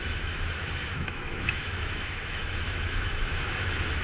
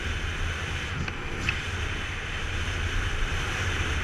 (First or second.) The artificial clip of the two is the first